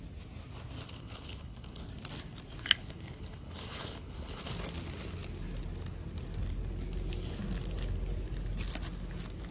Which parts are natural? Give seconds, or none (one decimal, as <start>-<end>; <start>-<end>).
0.0-0.9; 1.9-2.8; 4.5-9.5